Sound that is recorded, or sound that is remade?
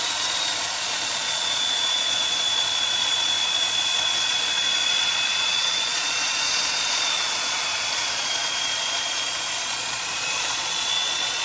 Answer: remade